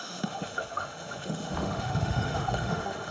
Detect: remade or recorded remade